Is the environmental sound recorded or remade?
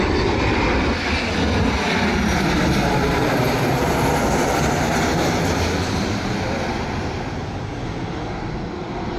recorded